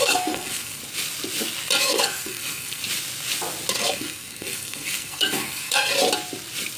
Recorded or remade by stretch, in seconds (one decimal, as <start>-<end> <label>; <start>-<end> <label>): 0.0-0.8 remade; 0.8-1.8 recorded; 1.8-2.8 remade; 2.8-3.7 recorded; 3.7-5.9 remade; 5.9-6.8 recorded